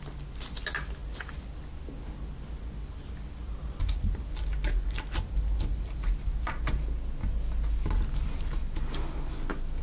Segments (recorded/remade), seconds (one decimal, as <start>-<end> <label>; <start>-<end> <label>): 0.0-9.8 recorded